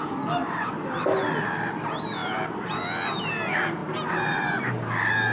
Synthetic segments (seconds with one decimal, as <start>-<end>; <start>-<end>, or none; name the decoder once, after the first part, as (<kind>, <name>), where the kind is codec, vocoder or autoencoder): 0.4-1.0 (vocoder, BigVGAN v2); 2.2-2.7